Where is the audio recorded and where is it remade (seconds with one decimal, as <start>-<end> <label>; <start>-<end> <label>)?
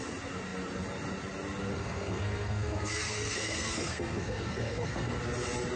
0.0-1.7 recorded; 1.7-5.2 remade; 5.2-5.8 recorded